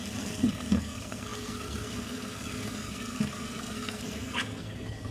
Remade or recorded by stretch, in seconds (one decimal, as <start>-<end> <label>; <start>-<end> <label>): 0.0-5.1 remade